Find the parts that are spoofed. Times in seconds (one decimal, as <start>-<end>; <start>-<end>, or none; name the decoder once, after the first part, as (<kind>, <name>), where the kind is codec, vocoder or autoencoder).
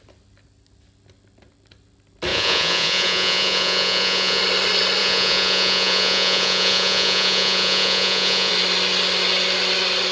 2.3-4.4 (vocoder, Vocos); 5.0-8.5